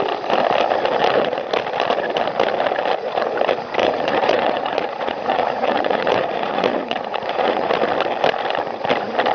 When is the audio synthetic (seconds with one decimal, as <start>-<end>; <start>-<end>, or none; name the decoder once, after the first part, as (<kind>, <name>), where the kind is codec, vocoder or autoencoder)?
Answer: 1.0-1.5 (vocoder, Vocos); 3.8-7.7